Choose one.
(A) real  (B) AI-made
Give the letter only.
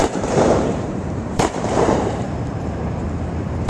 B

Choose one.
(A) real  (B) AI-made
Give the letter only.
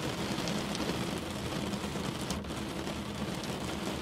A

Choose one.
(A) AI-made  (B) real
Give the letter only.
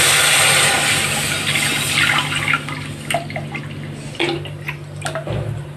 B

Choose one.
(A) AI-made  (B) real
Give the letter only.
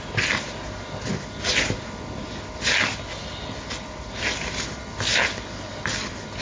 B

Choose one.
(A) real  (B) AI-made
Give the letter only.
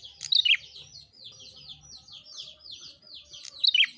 A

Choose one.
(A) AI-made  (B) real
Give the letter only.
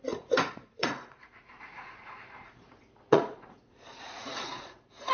A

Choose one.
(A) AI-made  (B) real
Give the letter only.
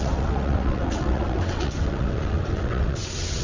A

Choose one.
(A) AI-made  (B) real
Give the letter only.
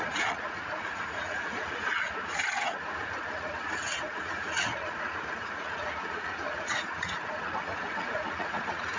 A